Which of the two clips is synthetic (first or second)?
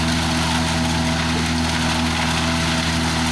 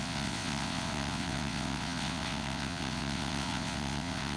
second